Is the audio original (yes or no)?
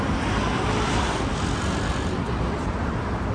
no